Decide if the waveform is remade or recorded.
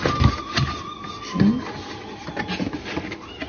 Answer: recorded